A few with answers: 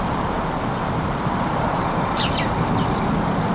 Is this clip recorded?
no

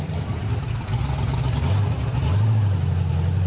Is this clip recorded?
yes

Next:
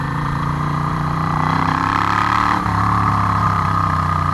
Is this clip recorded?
no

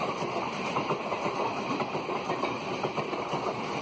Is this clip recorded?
yes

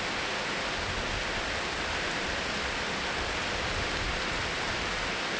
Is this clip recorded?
yes